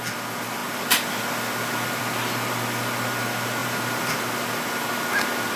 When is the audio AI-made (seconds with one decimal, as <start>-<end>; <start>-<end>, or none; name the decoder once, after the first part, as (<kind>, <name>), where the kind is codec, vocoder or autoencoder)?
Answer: 3.6-4.1 (vocoder, BigVGAN v2)

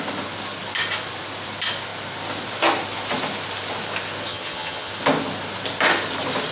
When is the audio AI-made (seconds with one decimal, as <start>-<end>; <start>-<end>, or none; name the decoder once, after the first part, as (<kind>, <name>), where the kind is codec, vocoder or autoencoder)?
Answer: 4.3-4.9 (vocoder, HiFi-GAN)